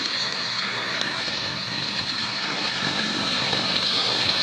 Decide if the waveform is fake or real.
fake